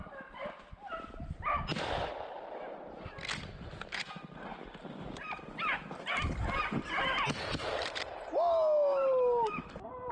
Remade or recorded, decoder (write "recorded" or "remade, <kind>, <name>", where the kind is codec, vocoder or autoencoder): recorded